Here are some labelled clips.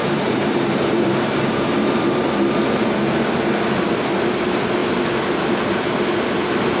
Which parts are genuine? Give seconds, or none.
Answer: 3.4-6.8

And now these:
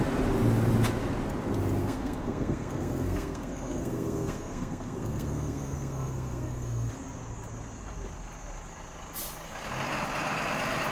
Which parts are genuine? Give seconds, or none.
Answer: 0.0-1.8; 6.9-10.9

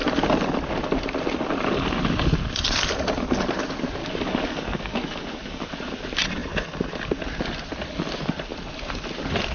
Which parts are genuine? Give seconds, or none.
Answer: 0.0-4.0; 5.7-9.5

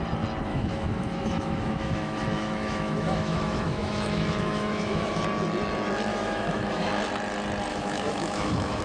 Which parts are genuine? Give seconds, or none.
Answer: 0.0-0.5; 5.2-6.1; 6.9-7.7

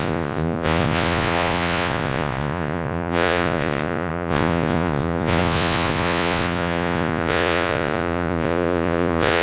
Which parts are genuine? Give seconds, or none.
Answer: none